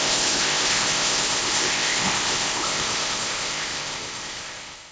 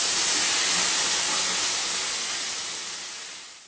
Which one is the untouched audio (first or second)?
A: second